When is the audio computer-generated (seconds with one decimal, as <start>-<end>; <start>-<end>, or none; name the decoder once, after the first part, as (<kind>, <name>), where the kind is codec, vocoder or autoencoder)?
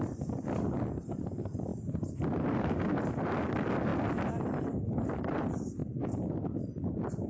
0.0-1.7 (vocoder, BigVGAN v2); 2.5-3.9; 4.7-5.8; 6.6-7.3